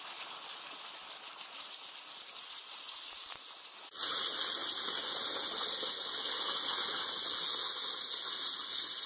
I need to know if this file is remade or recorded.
recorded